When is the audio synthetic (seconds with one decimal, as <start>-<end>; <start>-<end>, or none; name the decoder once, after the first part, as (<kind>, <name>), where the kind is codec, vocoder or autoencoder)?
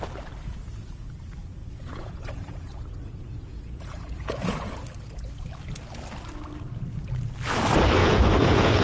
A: 1.6-4.8 (vocoder, Vocos); 8.0-8.8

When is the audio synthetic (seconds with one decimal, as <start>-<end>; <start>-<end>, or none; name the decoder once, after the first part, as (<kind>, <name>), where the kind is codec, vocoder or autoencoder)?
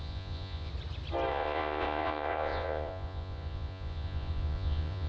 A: 0.0-0.7 (vocoder, Vocos); 1.3-5.1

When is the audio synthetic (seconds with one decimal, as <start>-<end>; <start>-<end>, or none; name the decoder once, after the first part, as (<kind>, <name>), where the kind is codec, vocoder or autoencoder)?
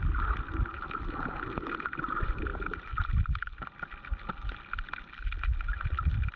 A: none